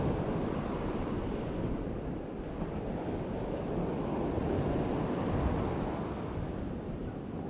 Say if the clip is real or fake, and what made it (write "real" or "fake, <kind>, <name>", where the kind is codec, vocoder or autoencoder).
real